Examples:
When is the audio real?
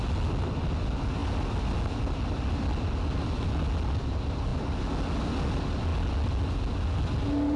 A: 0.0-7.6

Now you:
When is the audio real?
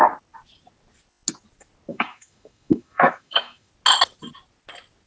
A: 0.0-1.9; 3.7-5.1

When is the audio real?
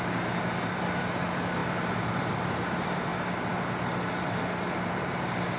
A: 0.0-5.6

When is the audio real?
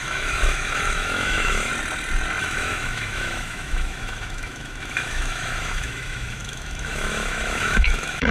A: 1.7-2.4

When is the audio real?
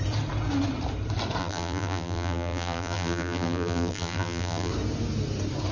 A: 0.0-1.4; 4.7-5.7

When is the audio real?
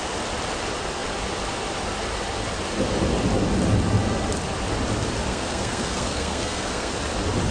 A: 0.0-5.3; 6.9-7.5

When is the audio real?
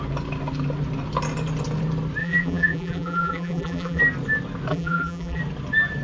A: 0.0-2.2; 4.0-4.7; 5.4-6.0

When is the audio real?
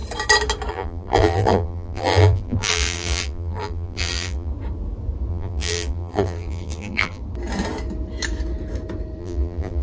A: 0.0-0.7; 4.5-5.3; 7.2-9.2